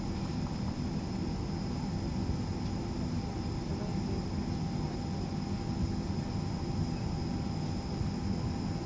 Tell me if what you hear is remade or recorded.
recorded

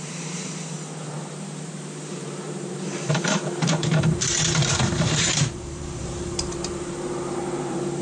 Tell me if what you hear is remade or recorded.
remade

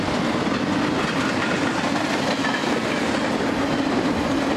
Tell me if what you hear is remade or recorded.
recorded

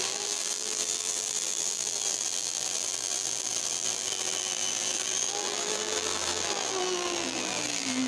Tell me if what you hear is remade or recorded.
remade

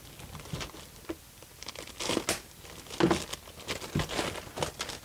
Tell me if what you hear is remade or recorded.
recorded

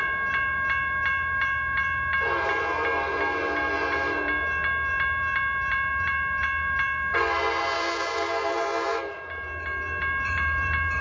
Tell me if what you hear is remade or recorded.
remade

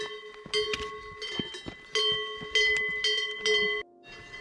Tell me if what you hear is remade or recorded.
recorded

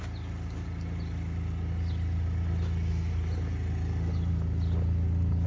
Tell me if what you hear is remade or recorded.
recorded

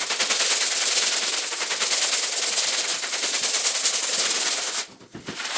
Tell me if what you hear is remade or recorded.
recorded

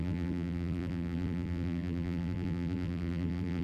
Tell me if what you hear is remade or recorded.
remade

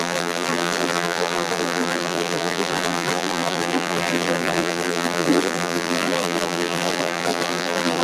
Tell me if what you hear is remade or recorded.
remade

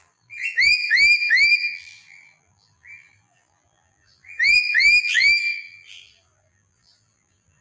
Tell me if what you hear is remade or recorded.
remade